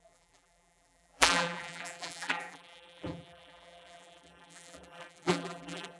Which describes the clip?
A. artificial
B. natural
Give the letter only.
A